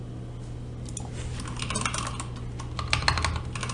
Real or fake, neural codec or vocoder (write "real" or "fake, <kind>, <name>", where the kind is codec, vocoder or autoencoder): real